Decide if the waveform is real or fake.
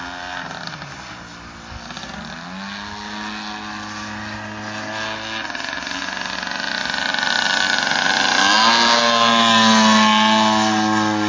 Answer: real